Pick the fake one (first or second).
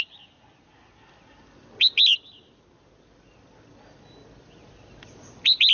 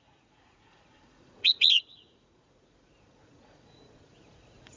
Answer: second